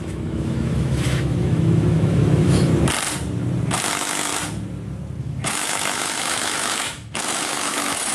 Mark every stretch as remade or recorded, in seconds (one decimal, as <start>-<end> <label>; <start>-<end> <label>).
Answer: 0.0-2.7 remade; 2.7-3.9 recorded; 3.9-4.3 remade; 4.3-5.2 recorded; 5.2-8.1 remade